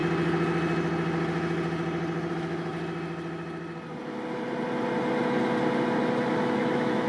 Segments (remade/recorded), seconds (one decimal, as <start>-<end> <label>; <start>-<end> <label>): 0.0-2.3 recorded; 2.3-2.7 remade; 2.7-6.2 recorded; 6.2-7.1 remade